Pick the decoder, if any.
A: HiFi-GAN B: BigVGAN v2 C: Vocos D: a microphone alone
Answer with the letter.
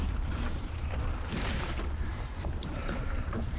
B